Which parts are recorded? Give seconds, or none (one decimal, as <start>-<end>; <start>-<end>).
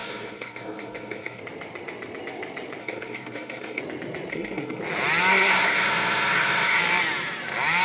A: 1.4-2.8; 3.8-4.3; 4.8-5.3; 6.8-7.8